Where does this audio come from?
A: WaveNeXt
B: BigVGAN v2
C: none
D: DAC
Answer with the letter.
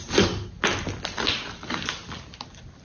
C